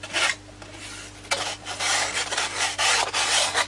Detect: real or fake real